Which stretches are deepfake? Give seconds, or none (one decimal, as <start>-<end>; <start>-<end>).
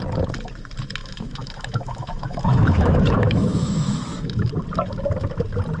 1.0-4.5